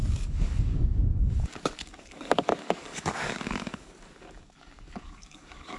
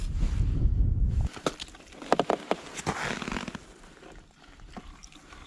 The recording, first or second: second